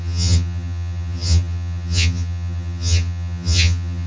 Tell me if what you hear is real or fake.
fake